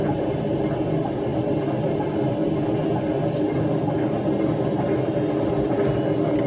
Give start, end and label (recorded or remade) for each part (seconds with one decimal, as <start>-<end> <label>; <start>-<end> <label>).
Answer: 0.0-6.5 recorded